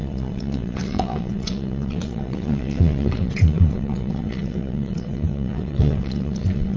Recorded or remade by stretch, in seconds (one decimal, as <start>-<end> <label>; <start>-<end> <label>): 0.0-6.8 remade